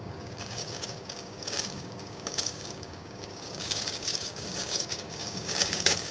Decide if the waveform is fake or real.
fake